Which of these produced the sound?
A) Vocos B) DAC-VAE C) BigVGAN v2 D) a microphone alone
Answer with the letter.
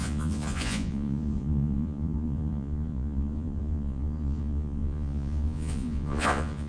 A